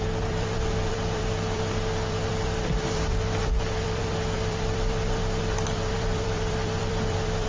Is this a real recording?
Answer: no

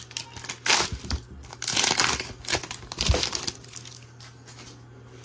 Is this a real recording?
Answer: yes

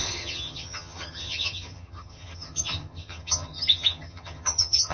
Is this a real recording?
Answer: no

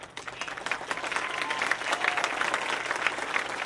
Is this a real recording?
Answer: yes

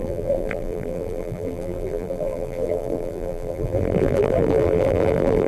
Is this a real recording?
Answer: no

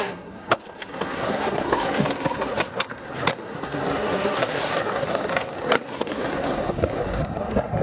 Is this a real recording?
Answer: no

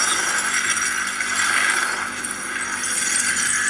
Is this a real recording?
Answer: yes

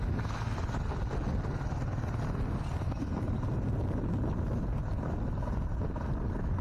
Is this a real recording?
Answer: yes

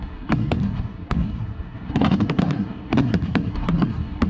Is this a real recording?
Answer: no